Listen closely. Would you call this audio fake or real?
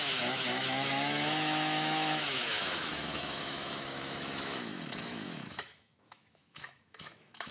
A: fake